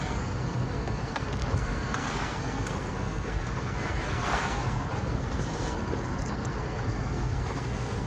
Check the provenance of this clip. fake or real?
fake